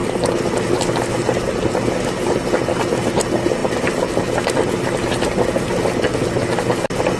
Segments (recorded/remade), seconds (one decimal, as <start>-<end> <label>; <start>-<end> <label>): 0.0-1.5 remade; 1.5-3.6 recorded; 3.6-6.1 remade; 6.1-7.2 recorded